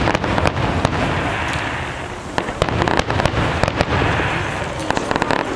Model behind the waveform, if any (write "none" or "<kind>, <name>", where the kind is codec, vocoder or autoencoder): none